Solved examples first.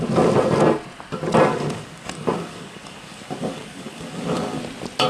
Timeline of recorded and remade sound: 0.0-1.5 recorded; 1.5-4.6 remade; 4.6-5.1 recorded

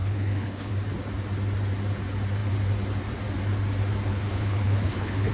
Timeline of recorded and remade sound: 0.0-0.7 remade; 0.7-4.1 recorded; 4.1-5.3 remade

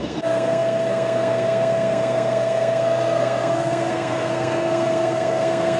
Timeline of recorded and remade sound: 0.0-5.8 remade